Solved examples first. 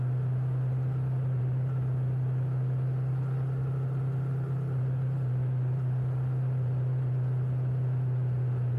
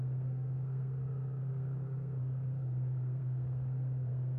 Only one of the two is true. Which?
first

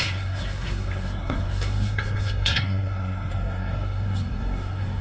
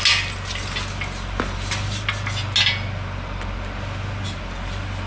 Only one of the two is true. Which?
second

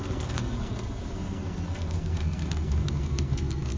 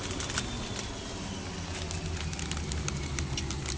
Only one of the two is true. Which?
second